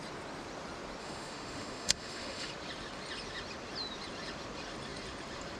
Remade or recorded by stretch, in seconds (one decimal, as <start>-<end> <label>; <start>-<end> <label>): 0.0-1.0 recorded; 1.0-2.5 remade; 2.5-5.6 recorded